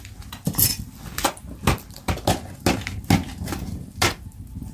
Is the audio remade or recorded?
recorded